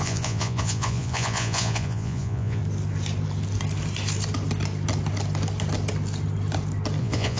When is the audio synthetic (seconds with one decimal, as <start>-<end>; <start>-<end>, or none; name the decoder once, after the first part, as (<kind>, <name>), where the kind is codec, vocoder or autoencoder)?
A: 0.0-2.6 (vocoder, Vocos); 7.0-7.4